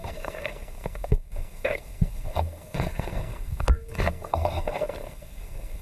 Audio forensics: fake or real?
fake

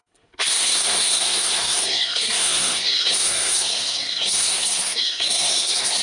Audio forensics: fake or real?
fake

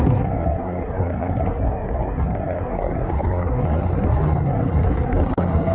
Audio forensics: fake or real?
fake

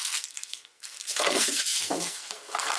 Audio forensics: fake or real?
fake